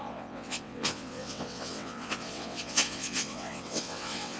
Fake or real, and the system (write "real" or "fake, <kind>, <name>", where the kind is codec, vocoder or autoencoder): fake, vocoder, WaveNeXt